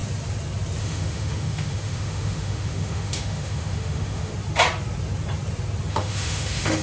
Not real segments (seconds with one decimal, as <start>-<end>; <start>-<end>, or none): 0.8-4.3; 5.9-6.8